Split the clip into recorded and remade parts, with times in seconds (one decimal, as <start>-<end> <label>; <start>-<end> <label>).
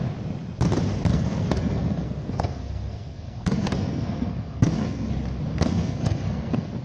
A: 0.0-1.1 recorded; 1.1-5.1 remade; 5.1-5.5 recorded; 5.5-6.8 remade